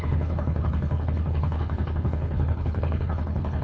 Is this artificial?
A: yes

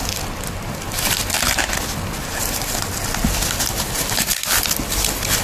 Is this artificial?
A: yes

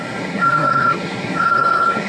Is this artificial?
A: yes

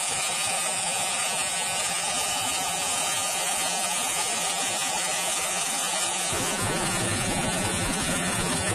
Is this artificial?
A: yes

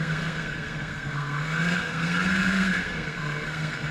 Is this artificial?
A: yes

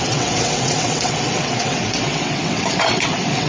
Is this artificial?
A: yes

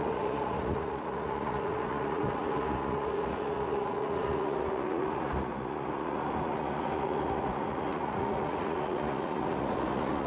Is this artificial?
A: yes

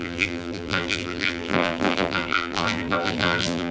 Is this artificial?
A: yes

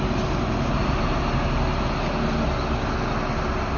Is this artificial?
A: no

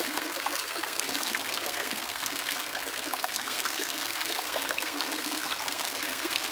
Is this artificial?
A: yes